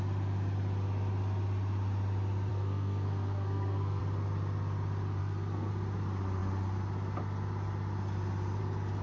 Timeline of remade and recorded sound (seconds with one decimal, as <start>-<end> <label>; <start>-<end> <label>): 0.0-2.5 recorded; 2.5-4.0 remade; 4.0-5.2 recorded; 5.2-5.7 remade; 5.7-9.0 recorded